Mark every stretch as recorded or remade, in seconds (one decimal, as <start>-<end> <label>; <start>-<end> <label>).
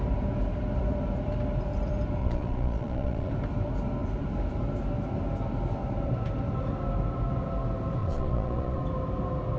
0.0-2.2 recorded; 2.2-3.3 remade; 3.3-8.0 recorded; 8.0-8.8 remade; 8.8-9.6 recorded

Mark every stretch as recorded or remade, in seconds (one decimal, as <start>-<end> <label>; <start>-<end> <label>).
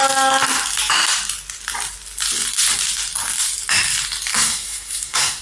0.0-4.3 recorded; 4.3-5.4 remade